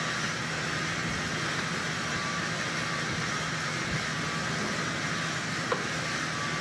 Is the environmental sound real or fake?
real